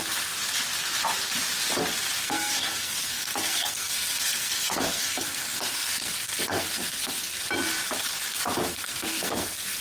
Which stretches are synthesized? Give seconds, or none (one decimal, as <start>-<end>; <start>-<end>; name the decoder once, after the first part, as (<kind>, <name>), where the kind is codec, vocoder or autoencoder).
2.2-7.4 (codec, SNAC); 8.7-9.8